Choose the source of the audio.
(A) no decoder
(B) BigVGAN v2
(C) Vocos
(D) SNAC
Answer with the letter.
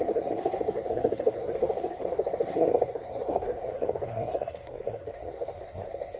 D